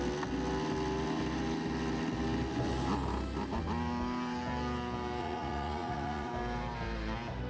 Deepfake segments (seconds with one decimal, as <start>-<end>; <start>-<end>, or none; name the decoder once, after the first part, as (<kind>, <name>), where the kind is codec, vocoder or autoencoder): 5.2-6.3 (vocoder, Vocos)